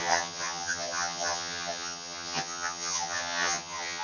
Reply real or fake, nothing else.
fake